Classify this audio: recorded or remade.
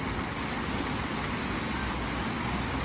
recorded